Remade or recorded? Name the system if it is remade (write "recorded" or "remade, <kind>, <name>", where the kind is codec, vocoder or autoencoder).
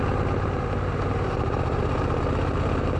remade, vocoder, BigVGAN v2